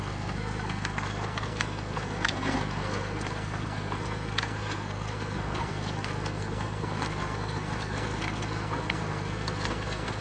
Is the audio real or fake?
fake